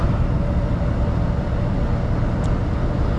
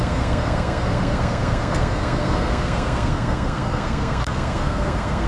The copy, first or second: second